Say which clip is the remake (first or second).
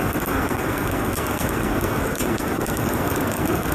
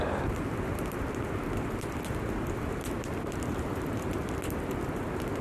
first